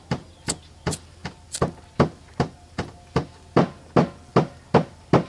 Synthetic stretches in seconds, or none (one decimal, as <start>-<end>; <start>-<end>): none